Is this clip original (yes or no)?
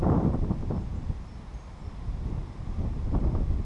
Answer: yes